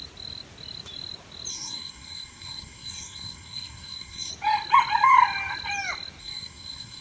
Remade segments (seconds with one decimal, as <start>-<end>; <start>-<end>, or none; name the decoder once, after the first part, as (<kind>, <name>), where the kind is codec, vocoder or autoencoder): 1.5-4.3 (codec, SNAC); 6.2-7.0